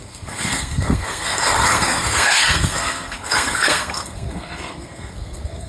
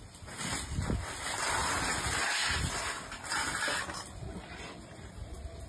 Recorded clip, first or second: second